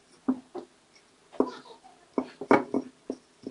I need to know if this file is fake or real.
real